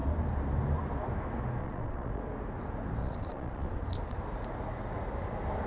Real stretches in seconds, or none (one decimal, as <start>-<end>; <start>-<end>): 0.0-1.6; 2.2-3.0; 4.2-5.7